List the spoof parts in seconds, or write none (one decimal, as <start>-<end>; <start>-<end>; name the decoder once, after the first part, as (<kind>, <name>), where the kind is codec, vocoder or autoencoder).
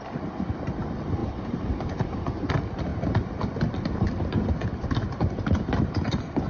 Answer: 1.2-2.5 (vocoder, BigVGAN v2)